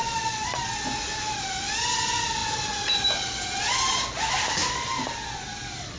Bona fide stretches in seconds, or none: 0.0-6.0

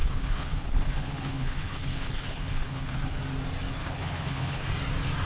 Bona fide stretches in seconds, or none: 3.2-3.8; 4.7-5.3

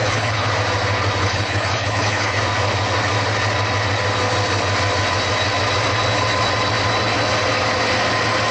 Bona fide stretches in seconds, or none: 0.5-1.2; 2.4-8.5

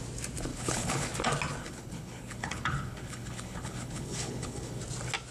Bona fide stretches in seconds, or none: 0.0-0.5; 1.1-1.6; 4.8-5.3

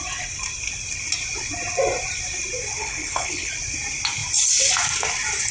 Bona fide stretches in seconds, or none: 0.0-2.8; 3.5-5.5

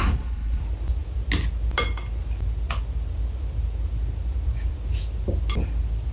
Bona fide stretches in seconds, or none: 0.6-6.1

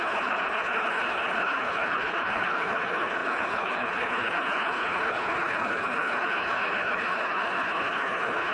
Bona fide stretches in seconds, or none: none